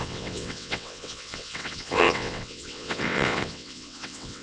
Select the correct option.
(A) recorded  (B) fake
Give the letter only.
B